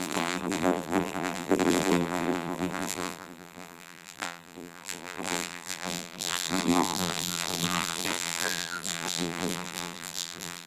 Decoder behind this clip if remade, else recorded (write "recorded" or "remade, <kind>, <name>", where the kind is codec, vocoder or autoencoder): remade, vocoder, BigVGAN v2